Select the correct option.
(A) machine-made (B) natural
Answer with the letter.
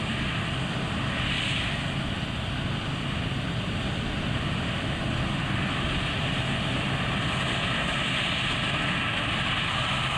B